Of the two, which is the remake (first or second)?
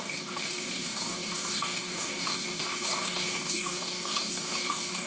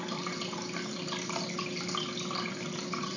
first